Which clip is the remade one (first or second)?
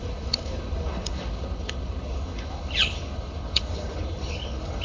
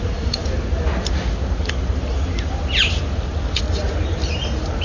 first